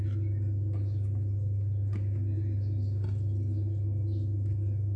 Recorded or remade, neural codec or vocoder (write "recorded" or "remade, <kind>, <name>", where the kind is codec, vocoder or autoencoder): recorded